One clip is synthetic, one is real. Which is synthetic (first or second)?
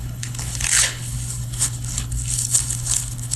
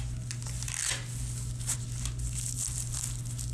first